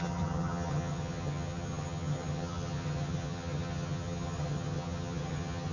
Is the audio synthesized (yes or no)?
yes